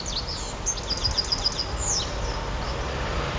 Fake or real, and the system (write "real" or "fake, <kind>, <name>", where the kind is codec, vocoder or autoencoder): real